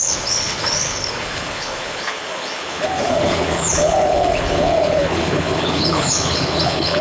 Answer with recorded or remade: remade